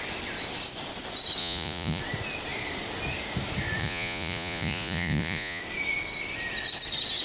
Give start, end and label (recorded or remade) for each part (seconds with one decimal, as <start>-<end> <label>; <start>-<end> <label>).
0.0-1.4 recorded; 1.4-2.0 remade; 2.0-3.8 recorded; 3.8-5.6 remade; 5.6-7.2 recorded